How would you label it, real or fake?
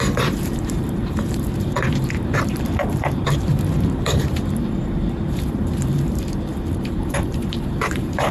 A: fake